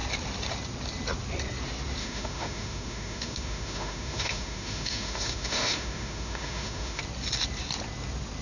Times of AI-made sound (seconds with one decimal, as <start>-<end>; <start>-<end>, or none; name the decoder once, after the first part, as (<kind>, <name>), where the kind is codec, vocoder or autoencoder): 2.0-7.0 (autoencoder, DAC-VAE)